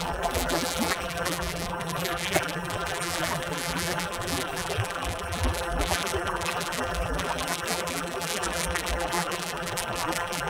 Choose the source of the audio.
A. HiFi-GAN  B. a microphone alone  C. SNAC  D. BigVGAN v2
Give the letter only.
D